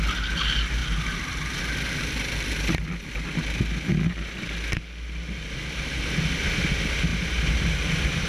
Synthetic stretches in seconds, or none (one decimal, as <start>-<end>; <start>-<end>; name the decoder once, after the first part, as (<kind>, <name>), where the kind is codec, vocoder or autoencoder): 7.1-8.3 (vocoder, BigVGAN v2)